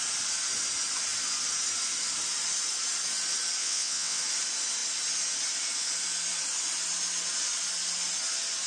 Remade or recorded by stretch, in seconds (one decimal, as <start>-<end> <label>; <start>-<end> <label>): 0.0-3.6 recorded; 3.6-4.2 remade; 4.2-8.7 recorded